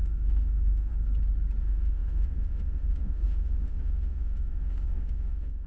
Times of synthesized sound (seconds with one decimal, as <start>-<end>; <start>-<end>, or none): 0.0-0.9; 1.6-5.7